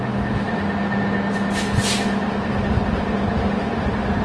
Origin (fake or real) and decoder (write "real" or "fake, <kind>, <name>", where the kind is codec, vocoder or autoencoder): real